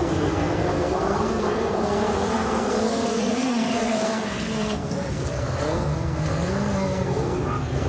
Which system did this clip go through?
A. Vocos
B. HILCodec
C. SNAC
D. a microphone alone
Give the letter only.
C